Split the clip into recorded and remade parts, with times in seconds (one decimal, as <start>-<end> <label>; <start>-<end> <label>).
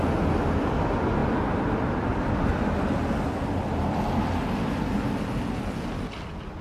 0.0-6.6 recorded